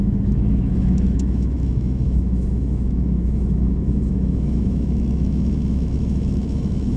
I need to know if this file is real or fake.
fake